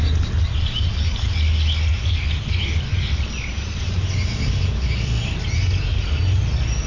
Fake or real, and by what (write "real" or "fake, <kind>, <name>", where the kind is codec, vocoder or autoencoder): real